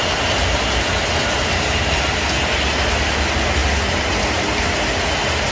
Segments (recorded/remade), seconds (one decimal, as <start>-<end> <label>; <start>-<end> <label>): 0.0-5.5 recorded